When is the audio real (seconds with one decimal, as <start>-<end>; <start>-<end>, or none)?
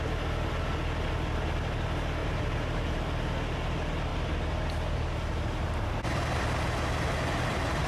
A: 0.0-2.2; 2.9-7.9